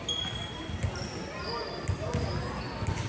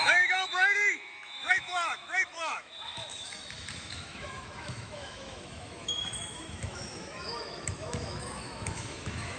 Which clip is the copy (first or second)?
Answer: second